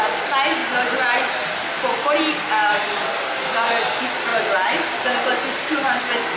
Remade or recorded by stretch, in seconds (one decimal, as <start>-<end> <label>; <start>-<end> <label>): 0.0-2.6 recorded; 2.6-3.1 remade; 3.1-6.4 recorded